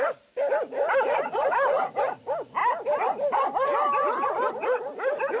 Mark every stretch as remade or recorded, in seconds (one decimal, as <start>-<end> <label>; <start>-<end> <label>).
0.0-5.4 recorded